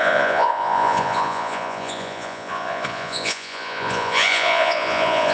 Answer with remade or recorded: remade